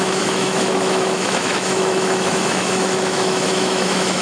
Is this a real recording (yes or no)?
no